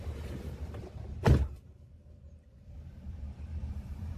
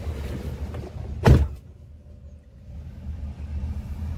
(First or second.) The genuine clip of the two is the second